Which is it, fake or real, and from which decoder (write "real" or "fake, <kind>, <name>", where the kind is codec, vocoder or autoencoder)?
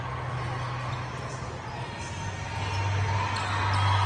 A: real